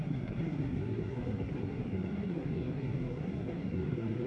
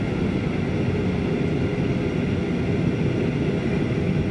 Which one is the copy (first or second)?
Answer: first